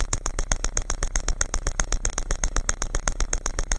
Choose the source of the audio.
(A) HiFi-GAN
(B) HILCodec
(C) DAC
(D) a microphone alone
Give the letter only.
B